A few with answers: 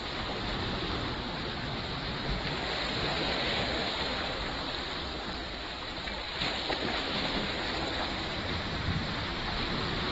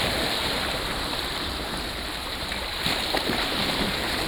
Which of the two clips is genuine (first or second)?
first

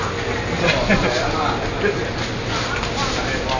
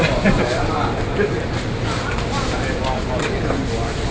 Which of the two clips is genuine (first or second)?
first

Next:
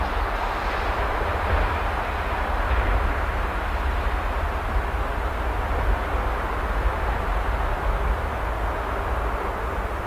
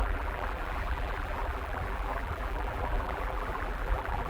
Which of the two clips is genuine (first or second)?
first